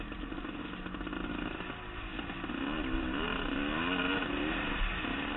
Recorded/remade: recorded